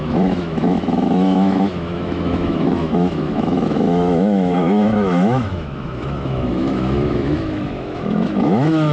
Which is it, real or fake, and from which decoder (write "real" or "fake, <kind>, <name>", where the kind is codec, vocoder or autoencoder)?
fake, autoencoder, DAC-VAE